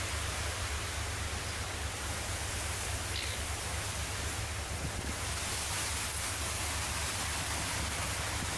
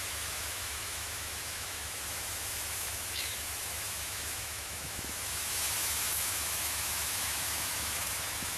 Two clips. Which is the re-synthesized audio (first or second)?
second